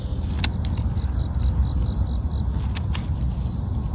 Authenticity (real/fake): real